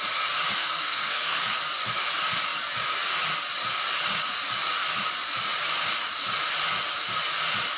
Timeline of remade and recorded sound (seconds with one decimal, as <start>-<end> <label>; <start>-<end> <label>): 0.0-0.6 recorded; 0.6-1.4 remade; 1.4-7.8 recorded